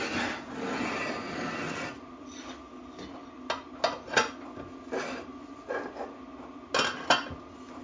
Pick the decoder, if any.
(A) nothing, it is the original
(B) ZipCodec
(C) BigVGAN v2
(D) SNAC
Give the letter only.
A